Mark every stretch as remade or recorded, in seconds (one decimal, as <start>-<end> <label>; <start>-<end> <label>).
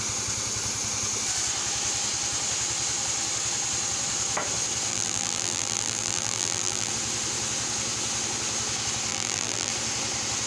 0.0-4.9 recorded; 4.9-6.9 remade; 6.9-9.1 recorded; 9.1-9.7 remade; 9.7-10.5 recorded